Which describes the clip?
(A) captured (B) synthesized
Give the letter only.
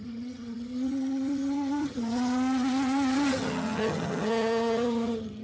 B